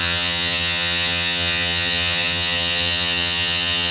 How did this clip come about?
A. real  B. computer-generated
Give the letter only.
B